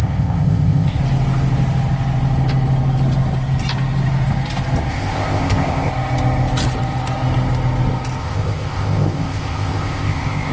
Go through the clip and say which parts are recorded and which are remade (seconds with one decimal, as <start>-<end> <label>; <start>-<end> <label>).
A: 0.0-1.0 remade; 1.0-4.9 recorded; 4.9-5.9 remade; 5.9-8.2 recorded; 8.2-10.5 remade